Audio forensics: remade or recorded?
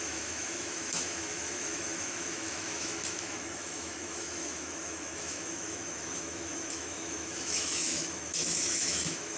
remade